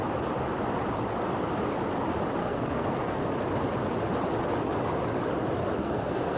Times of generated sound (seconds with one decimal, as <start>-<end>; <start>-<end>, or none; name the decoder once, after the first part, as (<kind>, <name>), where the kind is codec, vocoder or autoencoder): 2.4-3.2 (codec, SNAC); 5.8-6.4